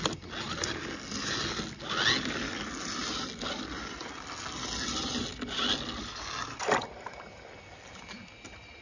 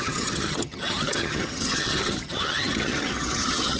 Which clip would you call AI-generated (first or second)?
second